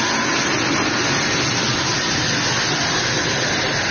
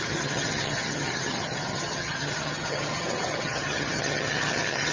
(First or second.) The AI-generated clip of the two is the second